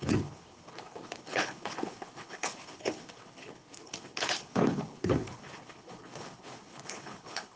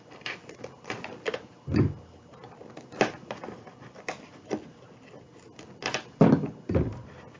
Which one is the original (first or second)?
second